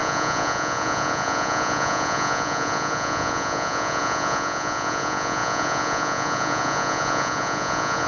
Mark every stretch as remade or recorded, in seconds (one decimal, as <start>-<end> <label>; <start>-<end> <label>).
0.0-8.1 remade